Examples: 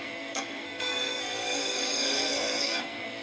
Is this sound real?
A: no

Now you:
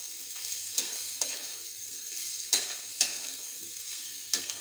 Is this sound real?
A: no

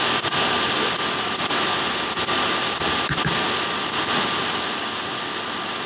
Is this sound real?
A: yes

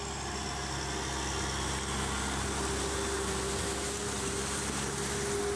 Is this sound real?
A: yes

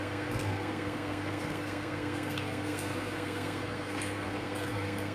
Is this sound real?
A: no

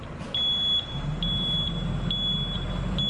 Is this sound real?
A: yes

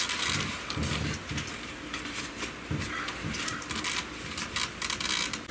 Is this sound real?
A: yes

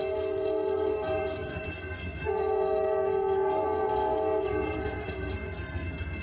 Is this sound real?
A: no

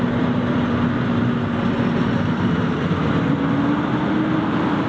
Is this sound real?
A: yes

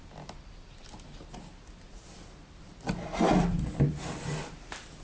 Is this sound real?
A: yes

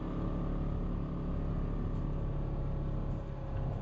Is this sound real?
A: yes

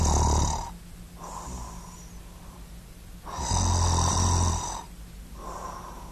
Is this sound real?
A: yes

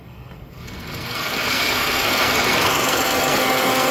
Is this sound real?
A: no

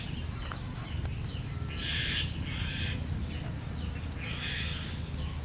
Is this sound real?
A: yes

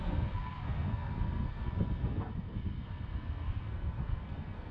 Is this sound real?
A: no